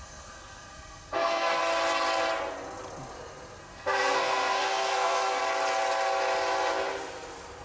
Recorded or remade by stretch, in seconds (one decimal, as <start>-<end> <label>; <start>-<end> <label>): 0.0-1.6 remade; 1.6-3.6 recorded; 3.6-5.4 remade; 5.4-7.6 recorded